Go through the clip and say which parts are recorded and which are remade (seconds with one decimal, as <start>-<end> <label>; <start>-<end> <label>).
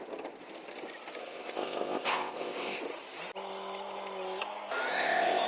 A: 0.0-1.2 recorded; 1.2-2.8 remade; 2.8-4.9 recorded; 4.9-5.5 remade